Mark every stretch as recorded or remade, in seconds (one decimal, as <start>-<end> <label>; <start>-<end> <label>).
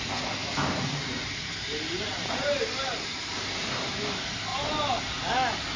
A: 0.0-0.4 recorded; 0.4-3.9 remade; 3.9-5.8 recorded